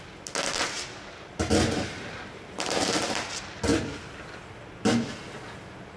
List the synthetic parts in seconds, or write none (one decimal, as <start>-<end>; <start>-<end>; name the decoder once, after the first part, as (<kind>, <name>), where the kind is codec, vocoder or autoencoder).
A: 0.6-3.0 (vocoder, BigVGAN v2)